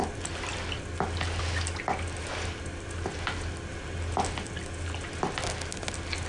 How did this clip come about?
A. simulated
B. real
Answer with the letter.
B